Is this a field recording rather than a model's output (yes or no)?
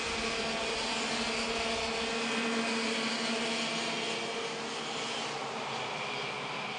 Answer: yes